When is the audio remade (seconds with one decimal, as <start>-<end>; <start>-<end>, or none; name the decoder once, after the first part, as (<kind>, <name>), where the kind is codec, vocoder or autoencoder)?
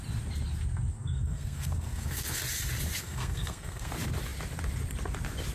0.9-2.4 (codec, SNAC); 3.0-3.9